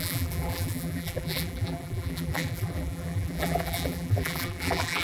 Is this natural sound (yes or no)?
no